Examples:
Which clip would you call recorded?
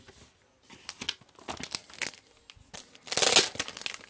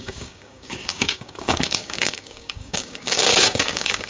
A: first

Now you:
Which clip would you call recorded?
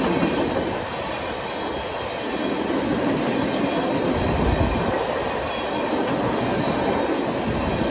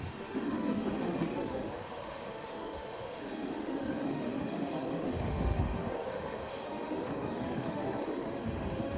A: first